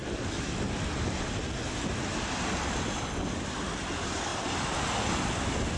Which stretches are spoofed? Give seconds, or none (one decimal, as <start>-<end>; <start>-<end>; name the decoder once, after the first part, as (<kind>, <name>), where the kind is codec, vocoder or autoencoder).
none